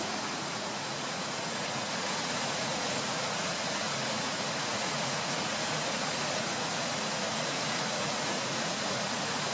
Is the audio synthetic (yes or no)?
yes